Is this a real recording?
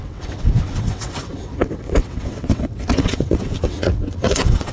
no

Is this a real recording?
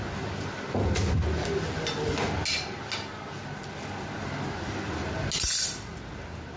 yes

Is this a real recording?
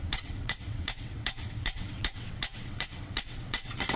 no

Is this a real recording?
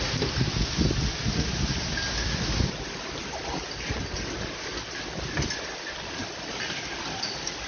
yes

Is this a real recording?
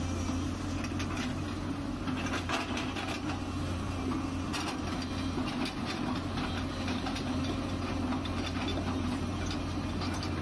yes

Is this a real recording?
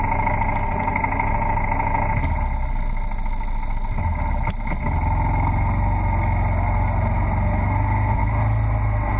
yes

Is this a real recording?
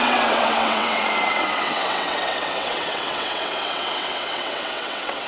no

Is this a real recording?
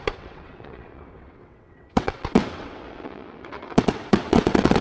no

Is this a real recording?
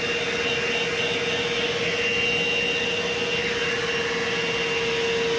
yes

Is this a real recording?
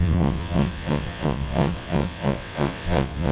no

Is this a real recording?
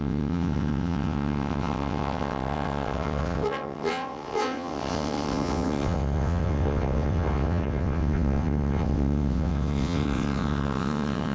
no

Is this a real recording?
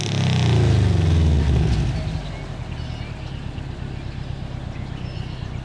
yes